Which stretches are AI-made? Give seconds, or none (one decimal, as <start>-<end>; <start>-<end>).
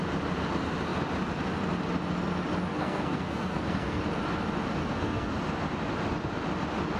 2.7-4.0; 4.8-5.3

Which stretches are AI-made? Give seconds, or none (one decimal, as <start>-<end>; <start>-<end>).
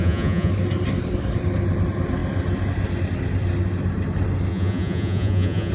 0.0-0.5; 4.5-5.7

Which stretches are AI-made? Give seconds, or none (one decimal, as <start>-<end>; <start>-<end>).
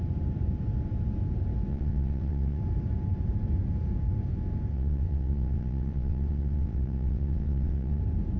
1.7-2.6; 4.7-8.0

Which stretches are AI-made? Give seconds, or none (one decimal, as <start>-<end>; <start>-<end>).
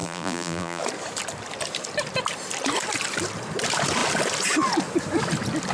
0.0-0.8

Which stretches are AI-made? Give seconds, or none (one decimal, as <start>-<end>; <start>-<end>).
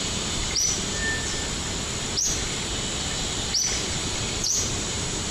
0.0-1.0; 3.9-5.3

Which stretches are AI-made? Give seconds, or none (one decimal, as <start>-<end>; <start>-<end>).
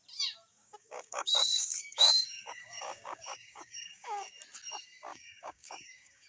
0.5-4.3; 5.1-6.3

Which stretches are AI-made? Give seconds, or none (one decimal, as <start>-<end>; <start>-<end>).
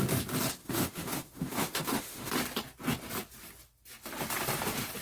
0.6-2.3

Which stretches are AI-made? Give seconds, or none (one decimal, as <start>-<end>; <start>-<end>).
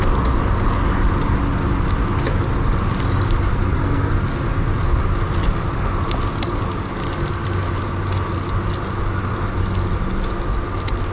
3.5-4.1